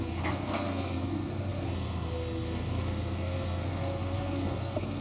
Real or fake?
fake